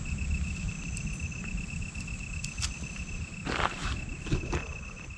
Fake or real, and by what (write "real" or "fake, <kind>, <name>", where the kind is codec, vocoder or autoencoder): real